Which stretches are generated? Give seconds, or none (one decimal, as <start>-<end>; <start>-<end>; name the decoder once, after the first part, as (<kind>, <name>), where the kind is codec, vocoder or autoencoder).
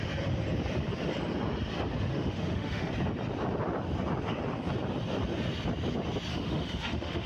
2.1-2.9 (autoencoder, DAC-VAE); 6.3-7.3